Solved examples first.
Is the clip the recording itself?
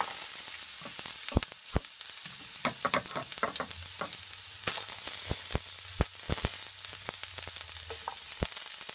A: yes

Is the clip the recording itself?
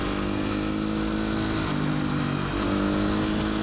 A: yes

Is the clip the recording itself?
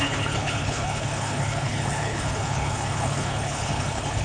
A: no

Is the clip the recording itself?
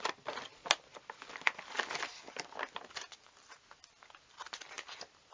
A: yes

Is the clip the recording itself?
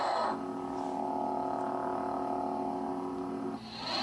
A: yes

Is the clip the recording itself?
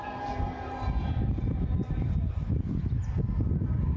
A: yes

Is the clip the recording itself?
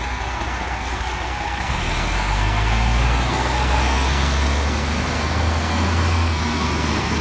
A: no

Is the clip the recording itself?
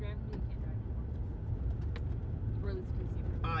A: yes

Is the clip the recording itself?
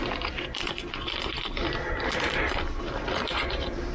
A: yes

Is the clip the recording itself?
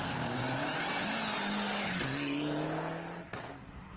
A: yes